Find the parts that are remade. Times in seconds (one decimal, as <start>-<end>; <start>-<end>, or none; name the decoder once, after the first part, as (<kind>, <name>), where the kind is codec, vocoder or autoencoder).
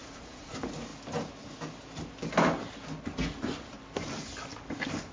0.0-0.5 (vocoder, Vocos)